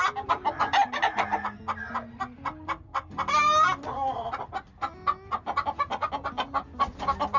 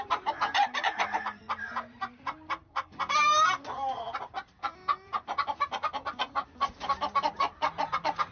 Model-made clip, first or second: second